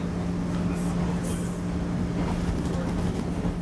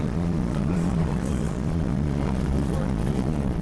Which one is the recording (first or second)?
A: first